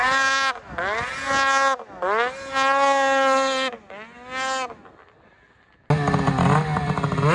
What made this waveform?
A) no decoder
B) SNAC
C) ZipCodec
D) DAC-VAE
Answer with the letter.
A